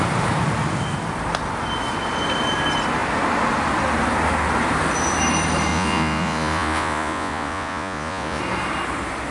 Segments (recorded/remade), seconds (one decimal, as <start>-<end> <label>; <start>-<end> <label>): 0.0-5.7 recorded; 5.7-8.4 remade; 8.4-9.3 recorded